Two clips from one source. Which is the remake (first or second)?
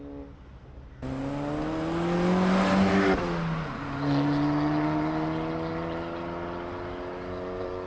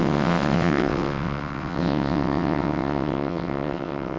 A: second